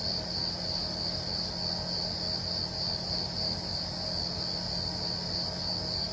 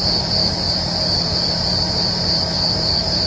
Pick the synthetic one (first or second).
second